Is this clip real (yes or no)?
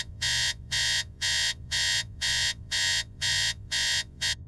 no